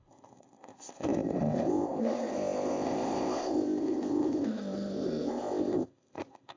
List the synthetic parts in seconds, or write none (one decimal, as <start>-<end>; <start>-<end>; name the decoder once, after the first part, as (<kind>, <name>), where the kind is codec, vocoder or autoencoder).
0.0-6.6 (codec, ZipCodec)